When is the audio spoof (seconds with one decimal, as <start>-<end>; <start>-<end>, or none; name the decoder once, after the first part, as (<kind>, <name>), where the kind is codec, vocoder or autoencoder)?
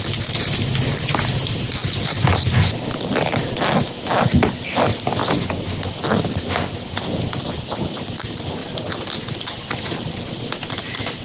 none